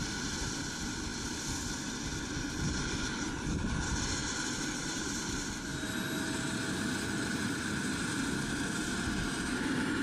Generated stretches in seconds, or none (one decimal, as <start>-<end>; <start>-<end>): none